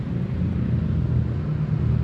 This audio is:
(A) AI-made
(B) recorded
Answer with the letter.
B